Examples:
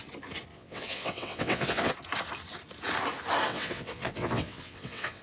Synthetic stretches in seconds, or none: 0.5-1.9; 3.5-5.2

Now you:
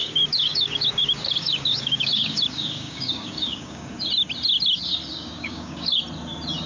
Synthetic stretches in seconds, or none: 0.0-4.0; 5.1-6.0

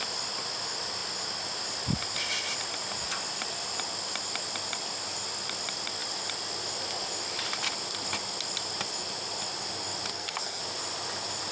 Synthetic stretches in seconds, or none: 10.1-10.6

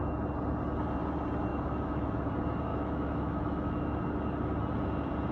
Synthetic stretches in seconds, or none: 1.5-2.3; 2.7-4.0

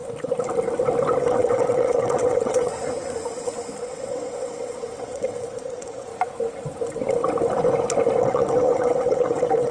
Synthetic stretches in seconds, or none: 1.2-2.7; 3.9-6.1; 8.2-9.7

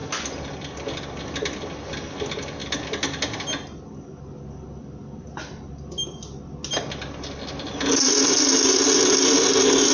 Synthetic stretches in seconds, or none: none